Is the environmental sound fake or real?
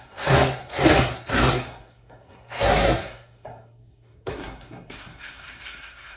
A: fake